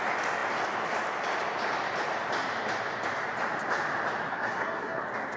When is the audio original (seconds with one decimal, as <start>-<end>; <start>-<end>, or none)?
0.0-4.3; 5.0-5.4